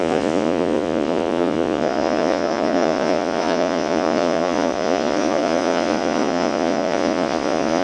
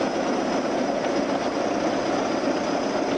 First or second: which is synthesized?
first